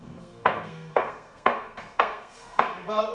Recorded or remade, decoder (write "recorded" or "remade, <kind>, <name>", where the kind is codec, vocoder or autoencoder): remade, codec, SNAC